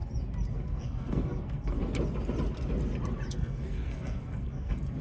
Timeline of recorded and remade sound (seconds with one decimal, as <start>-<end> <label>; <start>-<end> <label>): 0.0-0.5 recorded; 0.5-1.8 remade; 1.8-3.3 recorded; 3.3-5.0 remade